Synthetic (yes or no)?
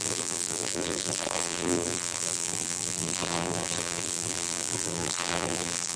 yes